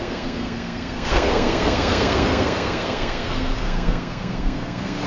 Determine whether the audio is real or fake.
fake